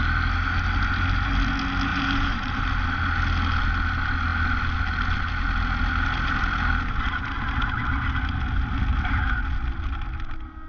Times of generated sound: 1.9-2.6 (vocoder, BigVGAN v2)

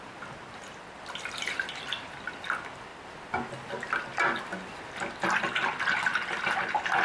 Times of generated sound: none

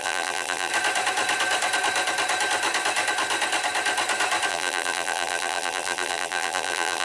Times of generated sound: 0.0-0.7 (vocoder, BigVGAN v2); 4.5-7.0

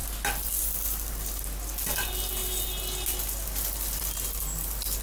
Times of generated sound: none